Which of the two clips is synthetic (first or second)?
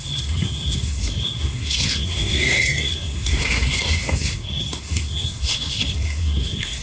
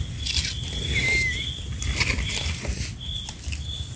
first